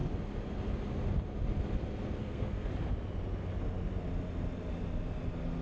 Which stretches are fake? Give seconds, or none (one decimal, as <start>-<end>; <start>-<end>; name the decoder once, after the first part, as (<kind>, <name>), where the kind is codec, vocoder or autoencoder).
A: 2.2-2.7 (codec, SNAC)